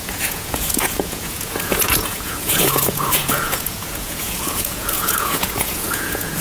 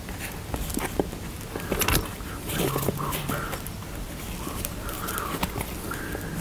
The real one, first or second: second